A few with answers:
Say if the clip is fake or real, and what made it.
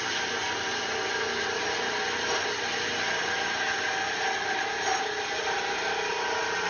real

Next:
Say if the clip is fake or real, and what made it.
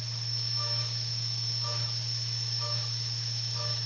fake, autoencoder, DAC-VAE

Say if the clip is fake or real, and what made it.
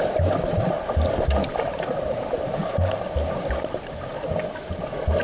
real